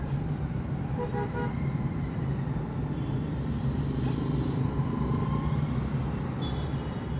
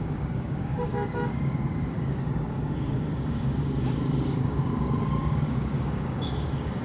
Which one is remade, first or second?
second